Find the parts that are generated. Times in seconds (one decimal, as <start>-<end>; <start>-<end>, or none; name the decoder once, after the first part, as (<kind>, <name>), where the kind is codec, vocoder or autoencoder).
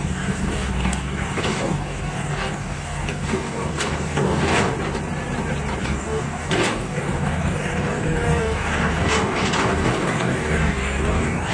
0.0-4.7 (codec, DAC); 5.8-11.5